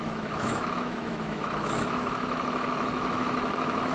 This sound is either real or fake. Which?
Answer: fake